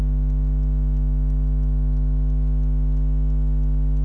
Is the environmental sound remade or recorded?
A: recorded